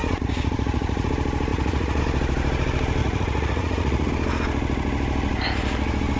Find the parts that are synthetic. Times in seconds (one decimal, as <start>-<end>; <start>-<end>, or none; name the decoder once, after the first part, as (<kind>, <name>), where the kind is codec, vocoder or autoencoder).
0.0-1.1 (vocoder, Vocos); 1.5-2.0; 3.0-4.1